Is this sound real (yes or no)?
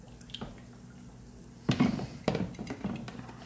yes